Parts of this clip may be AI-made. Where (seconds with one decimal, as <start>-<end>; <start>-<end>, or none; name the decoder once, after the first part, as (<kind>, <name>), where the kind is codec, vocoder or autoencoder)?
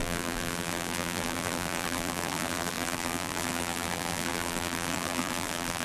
0.0-5.8 (vocoder, BigVGAN v2)